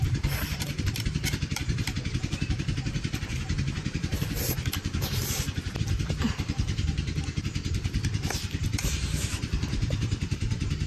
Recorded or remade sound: remade